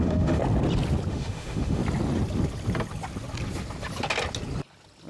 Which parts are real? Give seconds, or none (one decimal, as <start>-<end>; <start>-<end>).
0.4-1.1; 1.8-5.1